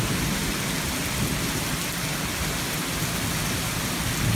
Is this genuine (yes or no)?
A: yes